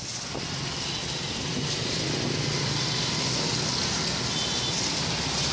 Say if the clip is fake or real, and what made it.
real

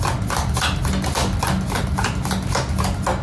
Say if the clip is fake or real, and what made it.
real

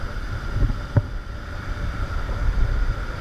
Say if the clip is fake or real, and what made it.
real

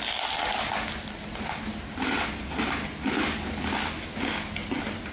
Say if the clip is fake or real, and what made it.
real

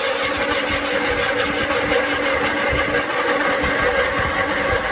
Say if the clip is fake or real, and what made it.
real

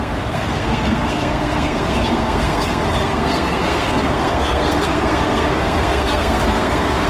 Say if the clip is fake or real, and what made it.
fake, codec, SNAC